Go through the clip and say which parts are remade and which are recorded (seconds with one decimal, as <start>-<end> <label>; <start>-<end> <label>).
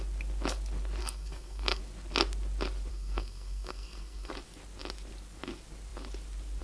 0.0-1.0 recorded; 1.0-1.8 remade; 1.8-2.9 recorded; 2.9-4.3 remade; 4.3-6.6 recorded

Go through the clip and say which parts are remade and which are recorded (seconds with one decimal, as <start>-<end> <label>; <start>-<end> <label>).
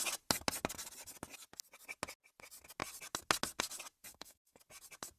0.0-4.1 recorded; 4.1-4.6 remade; 4.6-5.2 recorded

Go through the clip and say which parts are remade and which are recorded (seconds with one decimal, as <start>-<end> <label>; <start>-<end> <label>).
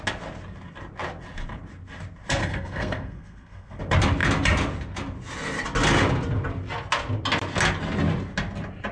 0.0-2.4 recorded; 2.4-3.8 remade; 3.8-8.9 recorded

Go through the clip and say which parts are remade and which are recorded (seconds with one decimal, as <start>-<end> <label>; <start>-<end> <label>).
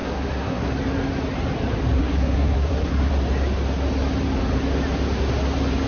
0.0-0.7 remade; 0.7-2.0 recorded; 2.0-3.1 remade; 3.1-5.9 recorded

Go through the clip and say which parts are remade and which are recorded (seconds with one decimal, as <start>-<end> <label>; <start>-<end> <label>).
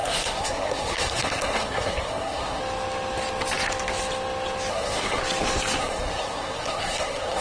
0.0-2.6 remade; 2.6-4.7 recorded; 4.7-5.2 remade; 5.2-5.8 recorded; 5.8-7.4 remade